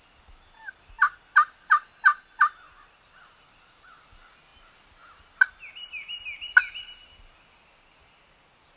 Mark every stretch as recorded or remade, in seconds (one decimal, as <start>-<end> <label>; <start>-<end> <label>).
0.0-8.8 recorded